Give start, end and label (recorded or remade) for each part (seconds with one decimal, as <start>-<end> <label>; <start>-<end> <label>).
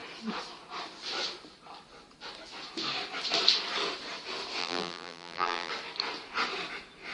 0.0-4.6 recorded; 4.6-5.7 remade; 5.7-7.1 recorded